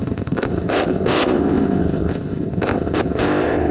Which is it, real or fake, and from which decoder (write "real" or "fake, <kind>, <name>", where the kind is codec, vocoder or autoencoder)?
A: fake, codec, ZipCodec